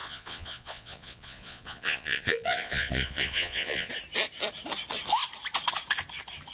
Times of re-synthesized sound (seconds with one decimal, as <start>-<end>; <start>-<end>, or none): 0.0-3.9